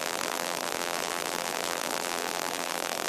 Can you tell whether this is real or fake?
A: fake